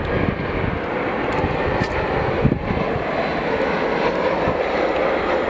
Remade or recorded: recorded